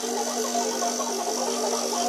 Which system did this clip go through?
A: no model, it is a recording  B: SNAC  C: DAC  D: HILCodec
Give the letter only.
A